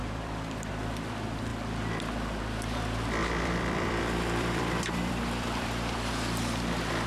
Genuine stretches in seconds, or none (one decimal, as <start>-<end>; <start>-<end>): 0.7-3.2; 6.1-7.1